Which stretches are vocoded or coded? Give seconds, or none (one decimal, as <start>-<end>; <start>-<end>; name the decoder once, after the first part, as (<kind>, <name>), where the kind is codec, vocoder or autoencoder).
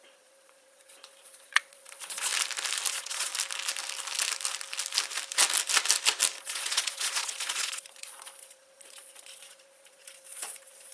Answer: 0.0-2.3 (vocoder, Vocos); 2.9-3.3; 6.4-10.9